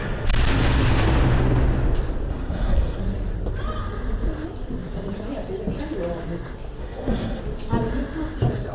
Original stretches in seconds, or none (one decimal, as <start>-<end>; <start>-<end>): 0.0-2.3; 3.0-6.8; 7.4-8.7